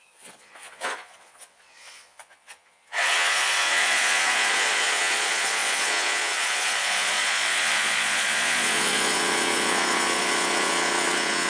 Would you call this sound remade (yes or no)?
yes